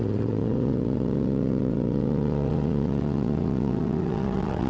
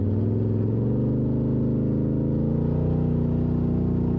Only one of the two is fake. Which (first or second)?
first